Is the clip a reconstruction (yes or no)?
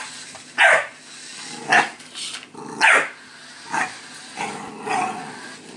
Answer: no